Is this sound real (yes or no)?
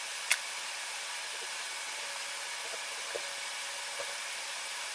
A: yes